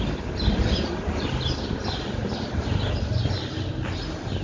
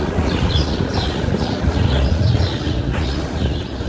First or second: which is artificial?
second